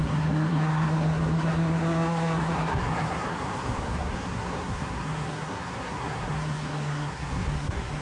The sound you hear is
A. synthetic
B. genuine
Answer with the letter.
A